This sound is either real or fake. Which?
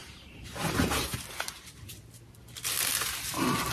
real